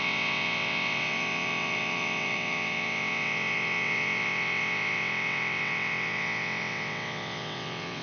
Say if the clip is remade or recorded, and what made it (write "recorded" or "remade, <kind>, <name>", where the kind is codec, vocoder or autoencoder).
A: remade, vocoder, WaveNeXt